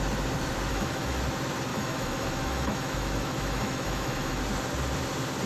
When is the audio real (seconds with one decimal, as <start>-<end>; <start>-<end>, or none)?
0.0-0.7; 1.2-1.7; 4.4-5.5